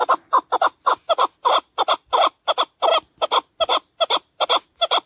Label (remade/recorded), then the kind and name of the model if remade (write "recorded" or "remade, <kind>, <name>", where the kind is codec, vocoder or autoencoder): recorded